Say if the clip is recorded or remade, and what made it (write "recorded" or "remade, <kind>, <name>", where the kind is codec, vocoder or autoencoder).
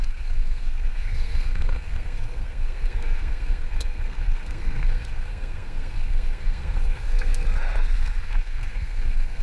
remade, codec, SNAC